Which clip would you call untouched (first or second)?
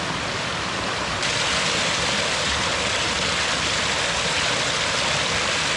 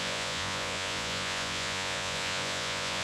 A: first